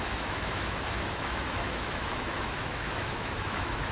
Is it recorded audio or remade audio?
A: remade